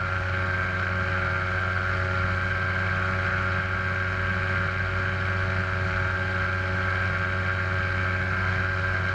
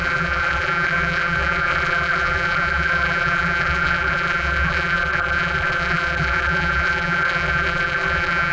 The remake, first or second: second